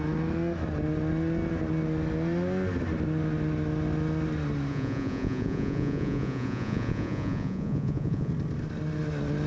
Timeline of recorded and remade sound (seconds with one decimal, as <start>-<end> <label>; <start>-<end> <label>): 0.0-4.7 recorded; 4.7-8.3 remade; 8.3-9.5 recorded